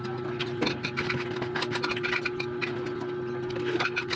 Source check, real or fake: real